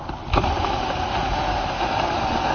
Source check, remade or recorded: recorded